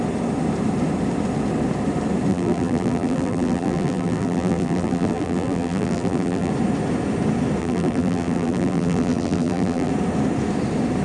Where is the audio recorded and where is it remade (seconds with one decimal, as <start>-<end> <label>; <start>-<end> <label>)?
0.0-2.3 recorded; 2.3-6.5 remade; 6.5-7.6 recorded; 7.6-9.9 remade; 9.9-11.0 recorded